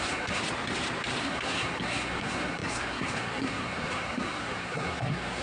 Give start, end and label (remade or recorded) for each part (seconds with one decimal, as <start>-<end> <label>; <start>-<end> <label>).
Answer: 0.0-0.4 remade; 0.4-1.2 recorded; 1.2-5.4 remade